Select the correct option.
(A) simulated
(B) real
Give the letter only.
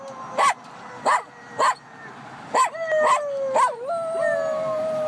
B